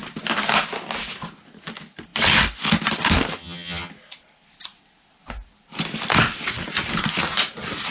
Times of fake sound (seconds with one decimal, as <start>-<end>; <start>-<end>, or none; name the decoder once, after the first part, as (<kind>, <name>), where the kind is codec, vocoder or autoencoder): 3.4-3.9 (vocoder, HiFi-GAN)